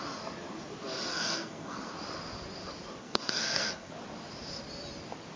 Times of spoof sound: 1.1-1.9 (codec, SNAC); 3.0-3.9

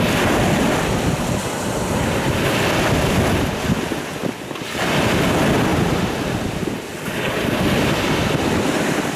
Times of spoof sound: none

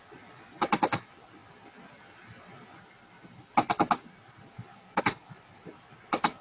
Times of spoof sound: none

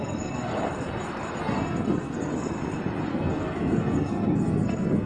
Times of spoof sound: 0.0-0.5 (codec, SNAC); 1.4-2.3; 3.1-5.1

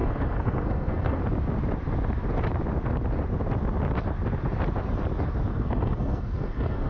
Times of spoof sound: 0.0-1.2 (codec, SNAC); 5.5-6.9